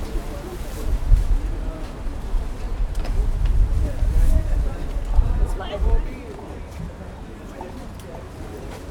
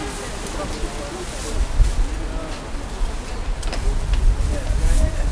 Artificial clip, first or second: first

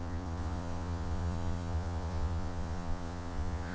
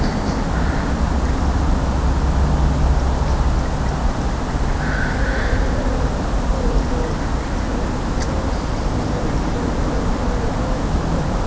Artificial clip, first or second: first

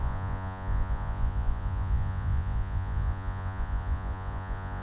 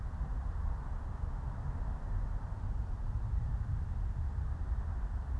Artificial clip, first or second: first